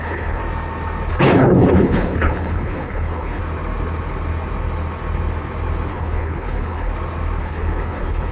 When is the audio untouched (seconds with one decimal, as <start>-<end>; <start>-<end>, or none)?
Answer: 0.4-1.1; 3.4-5.9; 6.9-7.4

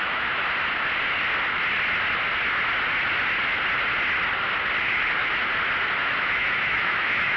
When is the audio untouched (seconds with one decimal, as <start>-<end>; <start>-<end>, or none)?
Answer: 0.4-4.8; 5.2-6.0

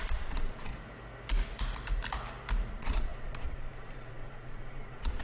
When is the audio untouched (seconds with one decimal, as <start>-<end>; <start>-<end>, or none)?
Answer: 0.7-2.7

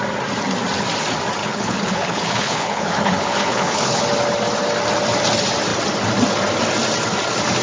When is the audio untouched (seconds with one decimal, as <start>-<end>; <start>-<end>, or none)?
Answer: 0.0-1.4; 4.0-7.6

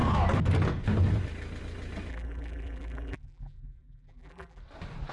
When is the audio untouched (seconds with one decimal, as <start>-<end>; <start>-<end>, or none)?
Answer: 0.0-2.1; 4.6-5.1

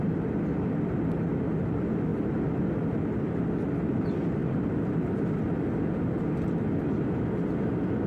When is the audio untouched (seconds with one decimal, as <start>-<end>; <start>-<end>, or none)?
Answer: 0.0-8.1

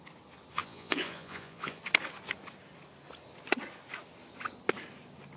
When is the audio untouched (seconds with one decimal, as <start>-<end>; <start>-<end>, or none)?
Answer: 0.0-0.6; 1.8-5.4

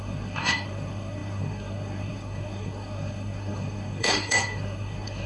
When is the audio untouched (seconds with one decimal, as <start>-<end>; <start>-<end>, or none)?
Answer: none